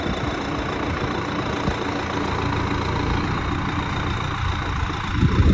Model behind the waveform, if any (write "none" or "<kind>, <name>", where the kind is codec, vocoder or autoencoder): none